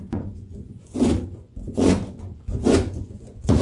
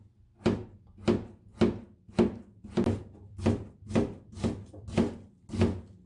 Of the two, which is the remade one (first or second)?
first